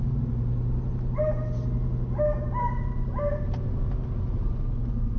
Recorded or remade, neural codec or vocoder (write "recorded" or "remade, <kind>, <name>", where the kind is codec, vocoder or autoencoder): recorded